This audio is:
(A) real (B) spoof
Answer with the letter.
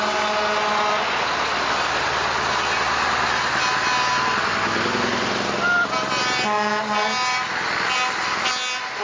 A